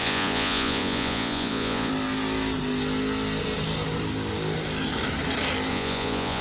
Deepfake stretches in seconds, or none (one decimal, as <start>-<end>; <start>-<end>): 0.0-1.9; 5.7-6.4